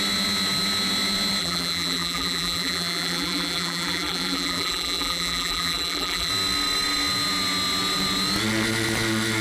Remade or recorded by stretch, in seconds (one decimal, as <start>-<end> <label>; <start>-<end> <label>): 0.0-1.4 recorded; 1.4-6.3 remade; 6.3-9.4 recorded